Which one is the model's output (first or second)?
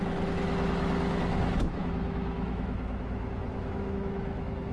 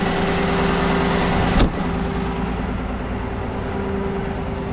first